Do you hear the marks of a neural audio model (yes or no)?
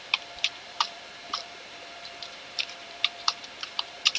yes